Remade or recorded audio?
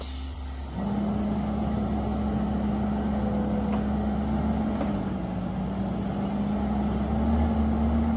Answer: recorded